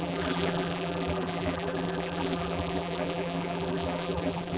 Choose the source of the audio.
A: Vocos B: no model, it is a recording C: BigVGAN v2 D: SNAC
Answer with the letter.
C